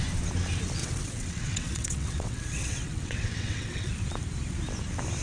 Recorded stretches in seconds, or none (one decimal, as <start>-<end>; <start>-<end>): 0.0-0.8; 3.9-5.2